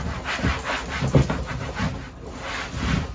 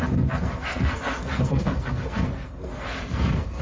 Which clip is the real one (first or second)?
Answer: first